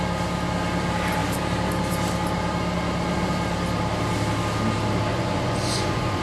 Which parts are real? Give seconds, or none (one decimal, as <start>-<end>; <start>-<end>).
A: 0.0-5.1